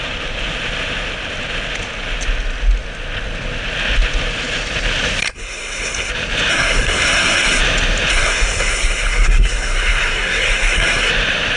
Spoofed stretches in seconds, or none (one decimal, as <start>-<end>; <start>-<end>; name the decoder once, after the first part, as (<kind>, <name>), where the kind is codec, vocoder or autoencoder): 5.2-6.1 (codec, SNAC); 6.5-7.6; 8.1-11.1